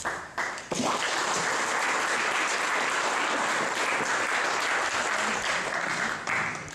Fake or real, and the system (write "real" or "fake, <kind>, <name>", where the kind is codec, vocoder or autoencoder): real